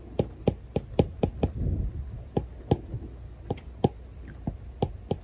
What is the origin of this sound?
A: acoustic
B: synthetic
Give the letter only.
A